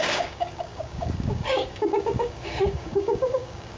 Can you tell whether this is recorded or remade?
remade